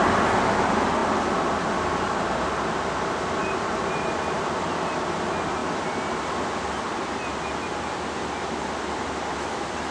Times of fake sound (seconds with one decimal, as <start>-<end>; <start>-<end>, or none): 3.4-4.1